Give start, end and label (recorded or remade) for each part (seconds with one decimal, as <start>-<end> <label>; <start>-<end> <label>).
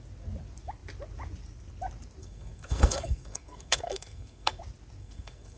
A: 0.0-2.2 recorded; 2.2-4.6 remade; 4.6-5.0 recorded; 5.0-5.6 remade